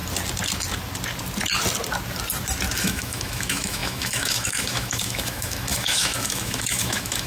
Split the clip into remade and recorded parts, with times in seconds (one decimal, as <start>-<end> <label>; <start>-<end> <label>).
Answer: 0.0-2.8 recorded; 2.8-7.3 remade